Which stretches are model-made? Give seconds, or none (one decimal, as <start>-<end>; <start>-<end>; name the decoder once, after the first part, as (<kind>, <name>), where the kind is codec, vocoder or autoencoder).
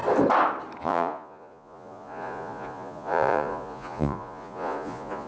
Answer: 0.8-5.3 (vocoder, Vocos)